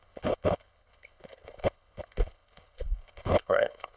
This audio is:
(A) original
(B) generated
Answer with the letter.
B